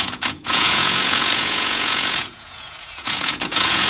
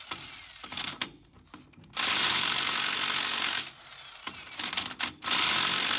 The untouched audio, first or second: second